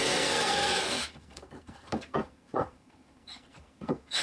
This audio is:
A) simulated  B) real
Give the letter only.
A